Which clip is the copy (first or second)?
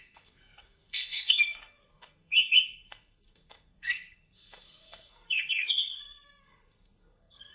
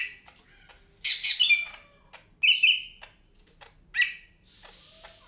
first